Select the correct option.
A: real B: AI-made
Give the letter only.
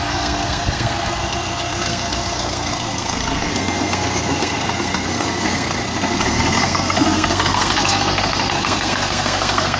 B